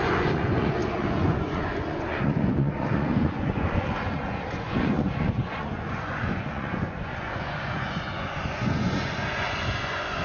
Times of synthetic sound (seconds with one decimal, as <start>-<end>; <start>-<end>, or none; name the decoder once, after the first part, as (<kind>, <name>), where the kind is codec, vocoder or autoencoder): 0.0-10.2 (vocoder, Vocos)